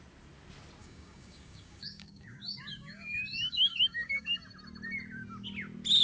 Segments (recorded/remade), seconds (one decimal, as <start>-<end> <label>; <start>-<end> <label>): 0.0-0.8 recorded; 0.8-4.4 remade; 4.4-6.0 recorded